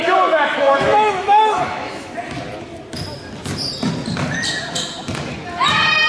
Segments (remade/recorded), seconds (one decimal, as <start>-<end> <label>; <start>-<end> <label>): 0.0-2.1 remade; 2.1-6.1 recorded